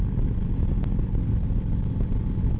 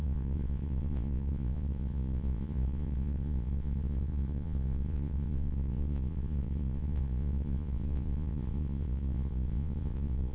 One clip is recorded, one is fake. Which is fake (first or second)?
second